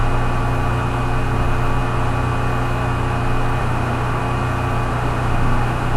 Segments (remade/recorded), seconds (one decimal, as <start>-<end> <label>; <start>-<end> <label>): 0.0-3.6 recorded; 3.6-4.2 remade; 4.2-4.9 recorded; 4.9-6.0 remade